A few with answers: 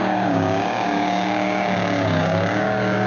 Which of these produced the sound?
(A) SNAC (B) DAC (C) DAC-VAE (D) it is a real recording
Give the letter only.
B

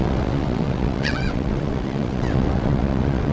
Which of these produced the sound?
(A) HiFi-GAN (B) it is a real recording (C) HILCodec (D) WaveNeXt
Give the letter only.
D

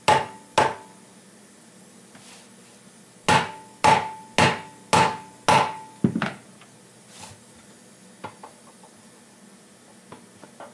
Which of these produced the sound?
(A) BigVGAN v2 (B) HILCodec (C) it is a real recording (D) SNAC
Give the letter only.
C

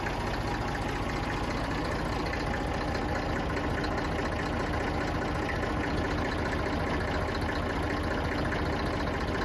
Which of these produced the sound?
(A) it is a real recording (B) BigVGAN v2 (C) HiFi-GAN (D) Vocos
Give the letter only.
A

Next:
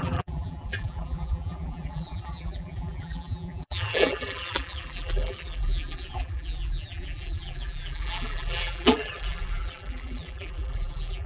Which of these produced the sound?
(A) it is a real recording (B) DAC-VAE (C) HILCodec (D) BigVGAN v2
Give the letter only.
D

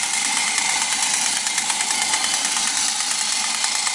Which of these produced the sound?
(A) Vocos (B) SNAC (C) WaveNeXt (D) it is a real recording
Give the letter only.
D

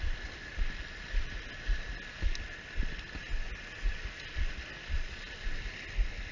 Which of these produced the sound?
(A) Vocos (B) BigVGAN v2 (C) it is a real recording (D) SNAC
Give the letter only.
C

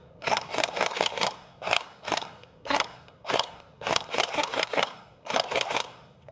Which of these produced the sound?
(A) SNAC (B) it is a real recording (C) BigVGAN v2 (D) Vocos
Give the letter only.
A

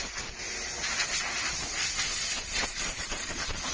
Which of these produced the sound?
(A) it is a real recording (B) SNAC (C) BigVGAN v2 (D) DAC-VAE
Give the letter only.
A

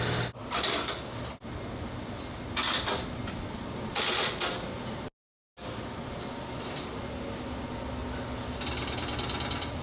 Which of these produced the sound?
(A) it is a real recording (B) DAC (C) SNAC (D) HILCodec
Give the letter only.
A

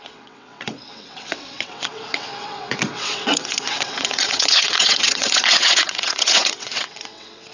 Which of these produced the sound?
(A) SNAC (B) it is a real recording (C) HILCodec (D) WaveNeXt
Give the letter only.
D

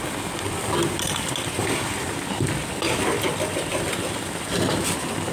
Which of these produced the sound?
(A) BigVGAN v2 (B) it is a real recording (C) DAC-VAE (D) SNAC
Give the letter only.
B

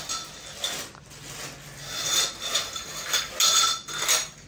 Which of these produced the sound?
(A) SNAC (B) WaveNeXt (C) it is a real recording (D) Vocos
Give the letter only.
C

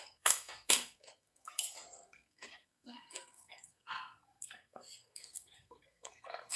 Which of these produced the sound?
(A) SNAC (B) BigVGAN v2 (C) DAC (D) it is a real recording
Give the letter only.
A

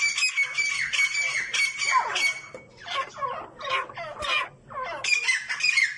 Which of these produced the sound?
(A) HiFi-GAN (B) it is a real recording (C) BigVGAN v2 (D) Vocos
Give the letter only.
B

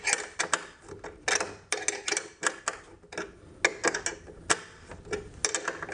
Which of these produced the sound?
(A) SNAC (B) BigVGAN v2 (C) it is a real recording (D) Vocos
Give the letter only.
C